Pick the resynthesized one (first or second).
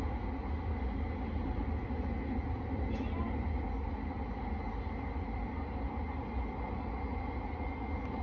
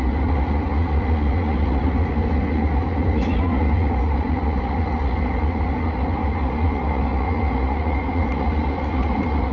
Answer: second